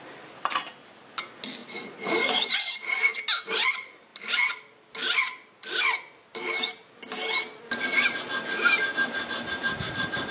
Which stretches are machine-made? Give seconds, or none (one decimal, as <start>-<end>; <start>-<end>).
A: 1.6-2.5